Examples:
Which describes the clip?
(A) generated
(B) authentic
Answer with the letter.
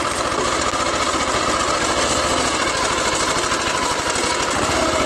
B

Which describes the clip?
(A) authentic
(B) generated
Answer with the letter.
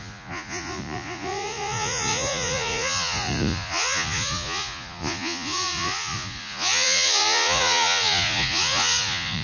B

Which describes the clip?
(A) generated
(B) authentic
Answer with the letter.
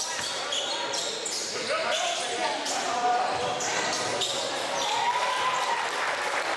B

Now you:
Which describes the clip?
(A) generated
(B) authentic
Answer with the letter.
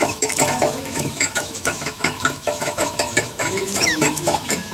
A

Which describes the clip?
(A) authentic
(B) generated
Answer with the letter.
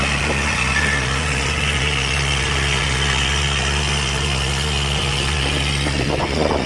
B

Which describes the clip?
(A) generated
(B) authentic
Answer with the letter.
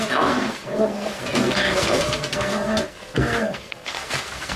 A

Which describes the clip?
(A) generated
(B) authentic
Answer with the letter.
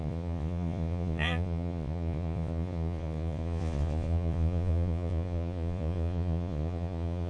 A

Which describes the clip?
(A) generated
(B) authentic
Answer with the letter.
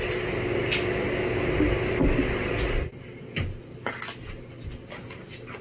B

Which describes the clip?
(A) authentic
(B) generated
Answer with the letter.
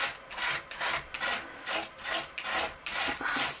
A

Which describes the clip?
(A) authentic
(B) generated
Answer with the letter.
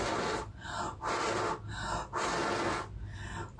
A